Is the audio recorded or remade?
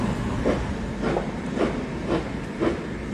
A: recorded